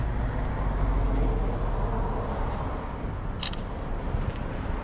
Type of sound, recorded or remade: recorded